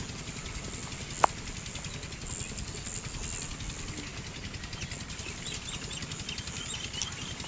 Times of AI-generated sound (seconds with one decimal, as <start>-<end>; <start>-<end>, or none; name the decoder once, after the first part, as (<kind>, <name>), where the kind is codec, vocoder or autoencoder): none